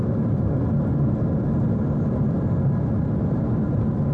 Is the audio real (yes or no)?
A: yes